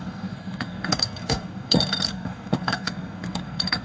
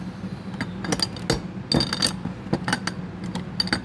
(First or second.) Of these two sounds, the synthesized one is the first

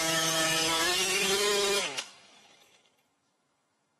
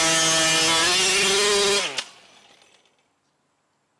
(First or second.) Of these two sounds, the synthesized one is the first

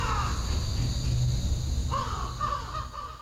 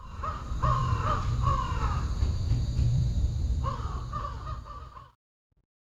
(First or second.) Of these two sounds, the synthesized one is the second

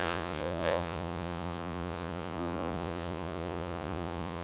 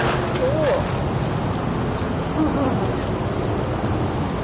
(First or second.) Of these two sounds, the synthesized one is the first